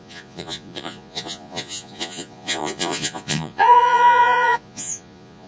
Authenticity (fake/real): fake